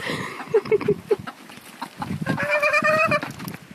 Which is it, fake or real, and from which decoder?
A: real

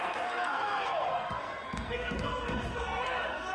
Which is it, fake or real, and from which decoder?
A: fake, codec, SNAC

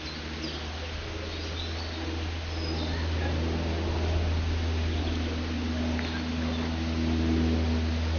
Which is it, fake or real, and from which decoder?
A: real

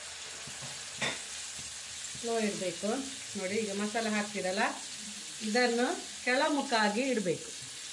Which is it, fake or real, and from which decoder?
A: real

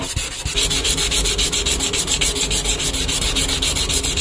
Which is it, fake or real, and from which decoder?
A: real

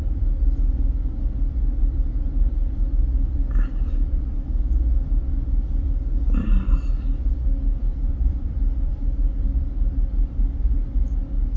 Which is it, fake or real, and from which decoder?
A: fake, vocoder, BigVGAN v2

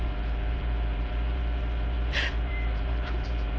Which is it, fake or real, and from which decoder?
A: fake, vocoder, BigVGAN v2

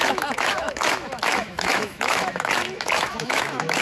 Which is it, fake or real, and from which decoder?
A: fake, autoencoder, DAC-VAE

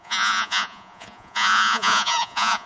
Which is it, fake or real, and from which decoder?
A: fake, vocoder, Vocos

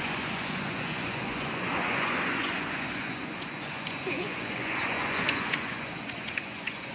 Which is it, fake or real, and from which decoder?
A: fake, vocoder, Vocos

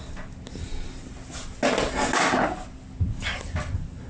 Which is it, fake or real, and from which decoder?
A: real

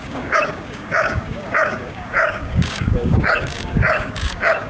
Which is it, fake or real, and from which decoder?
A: fake, codec, DAC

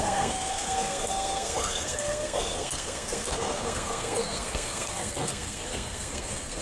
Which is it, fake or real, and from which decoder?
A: fake, codec, SNAC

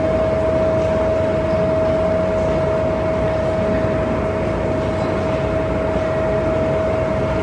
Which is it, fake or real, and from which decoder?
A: real